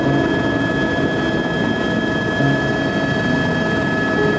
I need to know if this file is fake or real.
real